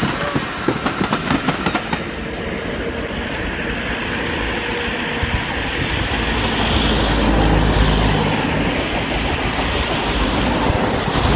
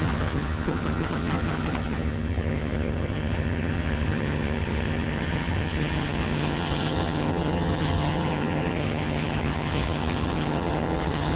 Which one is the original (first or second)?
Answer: first